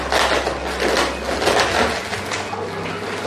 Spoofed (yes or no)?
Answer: no